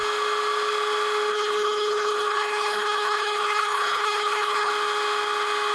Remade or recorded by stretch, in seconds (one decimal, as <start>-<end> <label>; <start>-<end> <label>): 0.0-1.3 recorded; 1.3-4.7 remade; 4.7-5.7 recorded